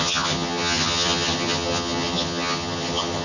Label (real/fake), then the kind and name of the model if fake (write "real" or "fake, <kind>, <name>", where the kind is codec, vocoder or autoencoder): fake, vocoder, HiFi-GAN